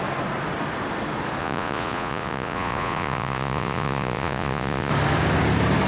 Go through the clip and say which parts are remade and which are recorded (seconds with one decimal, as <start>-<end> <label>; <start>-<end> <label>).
0.0-1.4 recorded; 1.4-4.9 remade; 4.9-5.9 recorded